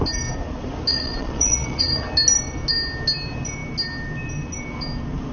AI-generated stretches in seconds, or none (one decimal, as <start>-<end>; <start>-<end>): 0.9-2.0